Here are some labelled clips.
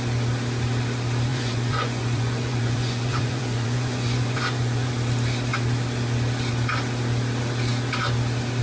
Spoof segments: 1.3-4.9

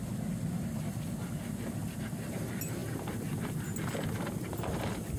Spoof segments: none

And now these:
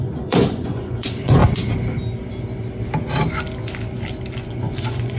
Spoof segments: 0.0-1.4; 4.5-5.2

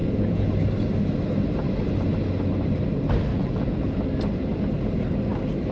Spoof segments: 0.0-0.5; 3.3-4.0